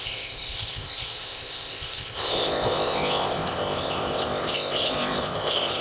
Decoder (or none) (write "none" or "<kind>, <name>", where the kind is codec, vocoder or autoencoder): codec, ZipCodec